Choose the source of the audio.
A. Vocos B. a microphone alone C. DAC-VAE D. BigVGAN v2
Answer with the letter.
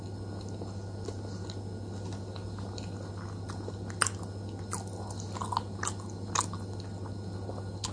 B